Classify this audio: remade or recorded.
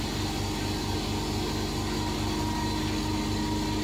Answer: recorded